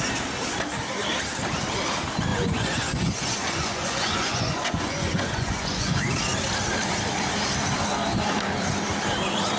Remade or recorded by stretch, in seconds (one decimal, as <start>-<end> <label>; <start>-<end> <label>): 0.0-2.3 recorded; 2.3-6.0 remade; 6.0-9.6 recorded